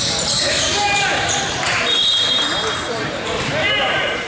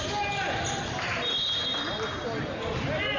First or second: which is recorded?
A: second